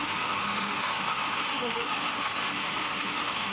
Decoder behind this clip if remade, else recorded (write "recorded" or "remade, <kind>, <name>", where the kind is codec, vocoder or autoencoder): remade, autoencoder, DAC-VAE